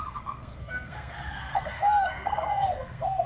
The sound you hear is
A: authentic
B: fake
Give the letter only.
B